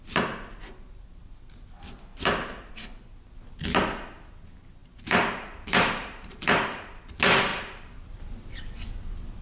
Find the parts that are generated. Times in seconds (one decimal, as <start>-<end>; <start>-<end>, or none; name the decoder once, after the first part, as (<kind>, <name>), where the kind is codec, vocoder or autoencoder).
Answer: 2.1-2.7 (vocoder, BigVGAN v2); 4.8-6.9; 7.5-8.3